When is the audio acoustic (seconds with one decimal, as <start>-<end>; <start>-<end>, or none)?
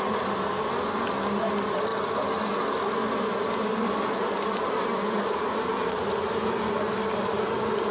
0.0-7.9